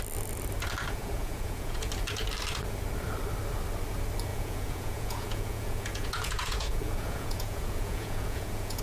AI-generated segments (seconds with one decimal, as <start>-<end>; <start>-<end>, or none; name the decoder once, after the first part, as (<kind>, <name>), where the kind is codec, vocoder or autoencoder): 1.0-1.9 (vocoder, Vocos); 4.3-8.8